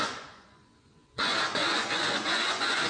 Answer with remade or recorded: remade